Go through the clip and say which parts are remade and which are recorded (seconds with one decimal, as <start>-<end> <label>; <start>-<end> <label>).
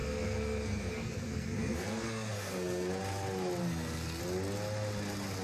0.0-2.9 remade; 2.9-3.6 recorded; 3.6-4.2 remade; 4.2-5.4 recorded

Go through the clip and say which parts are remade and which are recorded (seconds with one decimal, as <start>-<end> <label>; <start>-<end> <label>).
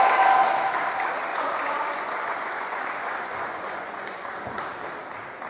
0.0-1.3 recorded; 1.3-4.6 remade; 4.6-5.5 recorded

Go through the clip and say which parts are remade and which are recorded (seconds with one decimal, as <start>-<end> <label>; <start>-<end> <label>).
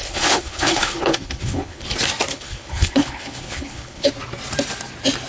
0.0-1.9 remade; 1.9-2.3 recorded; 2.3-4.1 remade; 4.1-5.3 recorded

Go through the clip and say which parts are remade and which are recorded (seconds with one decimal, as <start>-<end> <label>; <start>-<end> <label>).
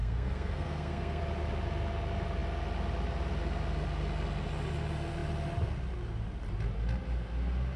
0.0-1.2 remade; 1.2-7.8 recorded